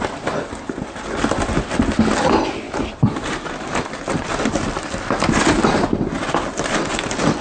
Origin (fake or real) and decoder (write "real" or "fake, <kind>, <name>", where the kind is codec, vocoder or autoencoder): real